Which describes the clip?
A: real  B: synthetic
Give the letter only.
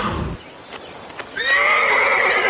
A